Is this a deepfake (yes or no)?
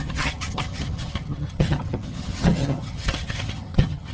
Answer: yes